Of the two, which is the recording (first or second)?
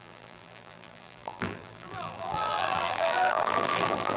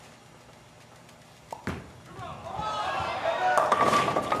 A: second